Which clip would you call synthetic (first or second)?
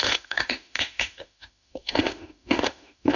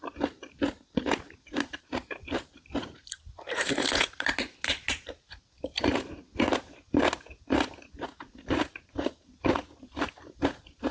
first